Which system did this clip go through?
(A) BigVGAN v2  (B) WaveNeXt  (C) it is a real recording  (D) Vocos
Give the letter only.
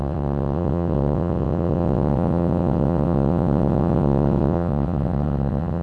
B